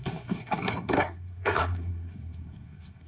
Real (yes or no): no